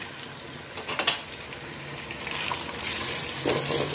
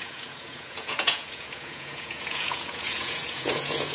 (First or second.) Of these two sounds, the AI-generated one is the second